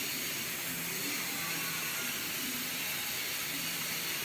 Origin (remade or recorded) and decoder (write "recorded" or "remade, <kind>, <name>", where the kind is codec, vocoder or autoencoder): recorded